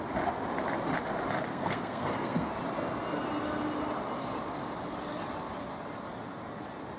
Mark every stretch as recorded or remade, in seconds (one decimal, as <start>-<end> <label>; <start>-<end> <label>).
0.0-1.5 recorded; 1.5-2.5 remade; 2.5-7.0 recorded